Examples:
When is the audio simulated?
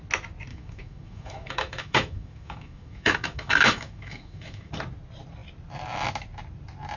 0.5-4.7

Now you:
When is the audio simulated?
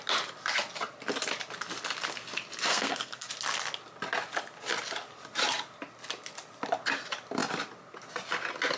2.7-3.3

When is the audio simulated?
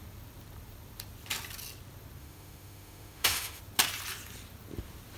2.2-3.6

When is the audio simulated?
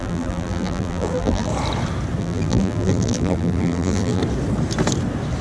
0.0-1.5; 2.2-4.2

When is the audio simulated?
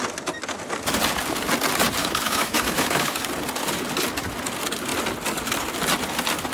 2.0-3.2